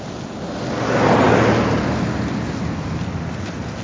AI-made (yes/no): no